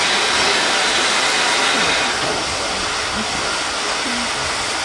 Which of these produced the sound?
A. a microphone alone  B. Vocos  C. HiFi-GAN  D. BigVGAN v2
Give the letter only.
A